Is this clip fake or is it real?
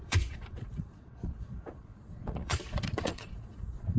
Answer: fake